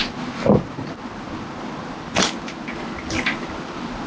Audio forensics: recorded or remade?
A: recorded